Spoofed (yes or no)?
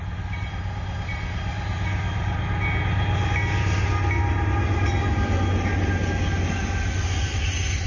no